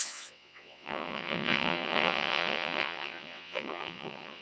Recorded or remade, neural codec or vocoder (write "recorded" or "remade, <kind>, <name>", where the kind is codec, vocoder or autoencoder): remade, vocoder, WaveNeXt